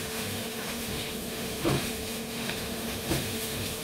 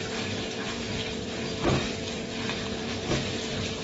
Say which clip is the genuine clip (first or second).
second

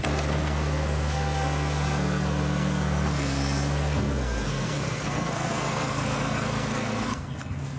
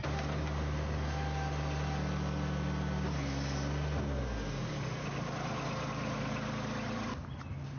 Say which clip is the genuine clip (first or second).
second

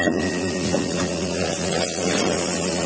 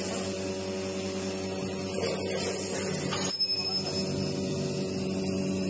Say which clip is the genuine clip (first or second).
second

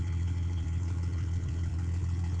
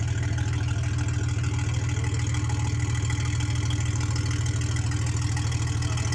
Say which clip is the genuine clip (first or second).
second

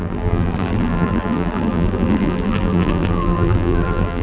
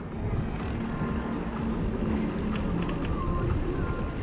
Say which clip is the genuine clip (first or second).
second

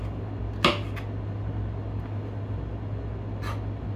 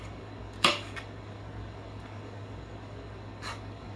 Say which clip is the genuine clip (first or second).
first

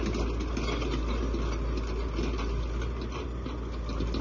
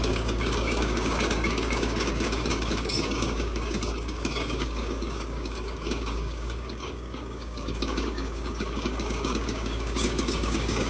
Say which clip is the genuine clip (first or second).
first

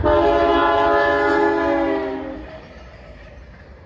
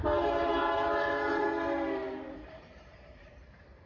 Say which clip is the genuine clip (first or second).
first